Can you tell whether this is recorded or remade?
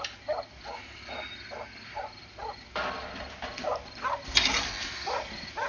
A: recorded